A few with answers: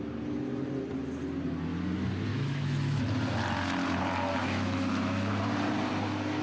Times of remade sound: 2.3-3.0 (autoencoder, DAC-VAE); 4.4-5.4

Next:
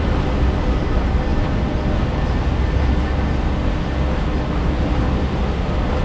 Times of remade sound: none

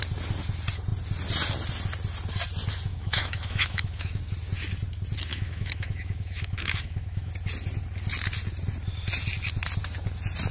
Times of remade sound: 2.9-4.2 (autoencoder, DAC-VAE); 5.3-7.3

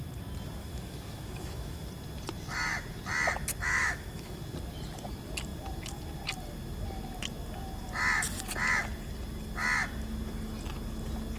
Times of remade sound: 0.6-1.9 (autoencoder, DAC-VAE); 3.7-4.4

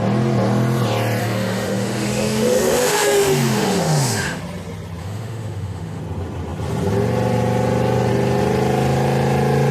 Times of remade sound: 1.2-4.4 (autoencoder, DAC-VAE); 5.0-6.0